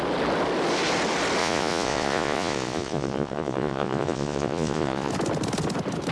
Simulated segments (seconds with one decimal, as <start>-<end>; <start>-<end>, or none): 1.4-5.1